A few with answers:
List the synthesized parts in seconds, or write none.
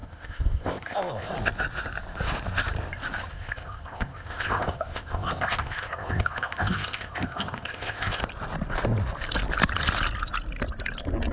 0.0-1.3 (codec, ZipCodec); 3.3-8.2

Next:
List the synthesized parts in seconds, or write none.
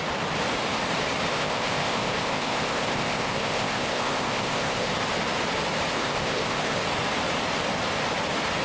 1.3-4.9 (codec, ZipCodec); 5.9-6.8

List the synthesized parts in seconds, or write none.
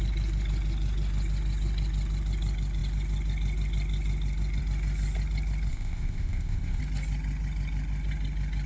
5.7-6.8 (codec, ZipCodec)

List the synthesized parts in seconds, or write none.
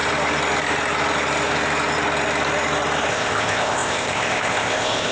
3.1-5.1 (codec, ZipCodec)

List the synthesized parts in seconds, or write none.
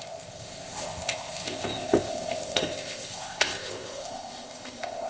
0.0-5.1 (codec, ZipCodec)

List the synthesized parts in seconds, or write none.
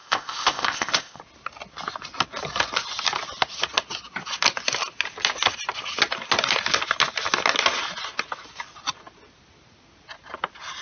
0.0-1.2 (codec, ZipCodec)